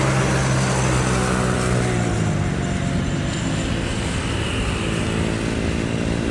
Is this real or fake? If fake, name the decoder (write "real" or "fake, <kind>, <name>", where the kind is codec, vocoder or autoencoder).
real